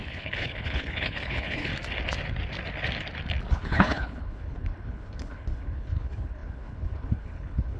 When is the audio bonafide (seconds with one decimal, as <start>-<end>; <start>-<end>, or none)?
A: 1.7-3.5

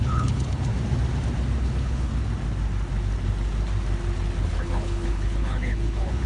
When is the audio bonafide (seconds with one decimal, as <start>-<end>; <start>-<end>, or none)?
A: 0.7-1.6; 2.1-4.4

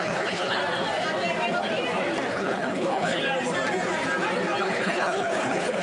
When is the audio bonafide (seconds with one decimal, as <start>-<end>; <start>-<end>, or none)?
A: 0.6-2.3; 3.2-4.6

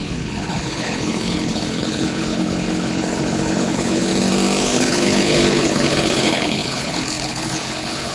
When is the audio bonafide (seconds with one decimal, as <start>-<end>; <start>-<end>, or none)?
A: 4.1-4.6

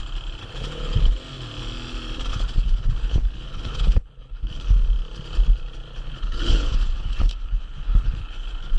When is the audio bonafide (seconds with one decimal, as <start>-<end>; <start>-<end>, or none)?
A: 0.0-0.4; 1.0-2.3; 4.7-5.9

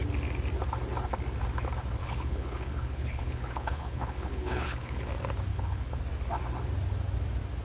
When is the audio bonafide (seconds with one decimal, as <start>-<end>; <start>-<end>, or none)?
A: 0.0-2.0; 5.0-5.5; 6.0-7.6

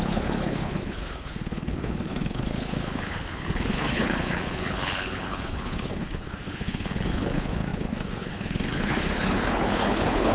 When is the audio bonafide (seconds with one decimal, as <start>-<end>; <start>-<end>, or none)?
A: none